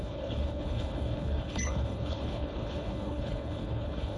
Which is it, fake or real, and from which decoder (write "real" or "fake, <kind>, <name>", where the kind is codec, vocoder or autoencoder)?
fake, codec, HILCodec